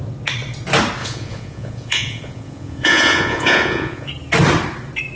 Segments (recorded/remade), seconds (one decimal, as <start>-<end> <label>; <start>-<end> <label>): 0.0-1.0 recorded; 1.0-4.1 remade; 4.1-5.2 recorded